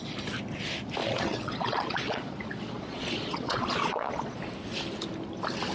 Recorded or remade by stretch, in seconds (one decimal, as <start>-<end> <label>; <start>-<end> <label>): 0.0-1.0 recorded; 1.0-4.4 remade; 4.4-5.7 recorded